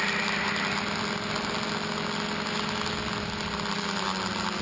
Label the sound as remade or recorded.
recorded